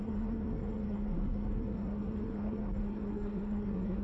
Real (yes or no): no